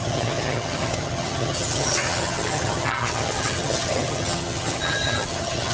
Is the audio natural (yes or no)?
no